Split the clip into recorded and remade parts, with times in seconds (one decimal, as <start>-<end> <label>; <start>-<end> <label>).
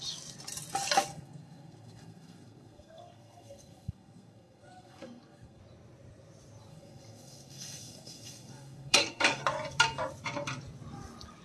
0.0-1.1 recorded; 1.1-5.6 remade; 5.6-6.7 recorded; 6.7-9.4 remade; 9.4-11.4 recorded